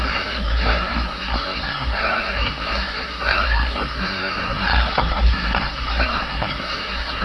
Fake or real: fake